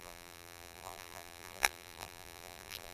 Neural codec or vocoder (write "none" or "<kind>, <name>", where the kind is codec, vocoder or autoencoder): vocoder, BigVGAN v2